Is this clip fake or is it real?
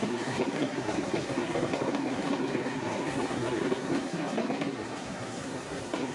fake